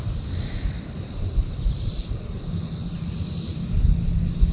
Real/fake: real